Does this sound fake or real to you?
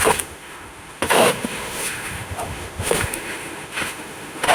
fake